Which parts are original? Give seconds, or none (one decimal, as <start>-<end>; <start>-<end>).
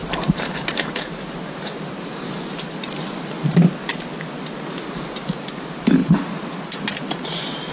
2.1-7.7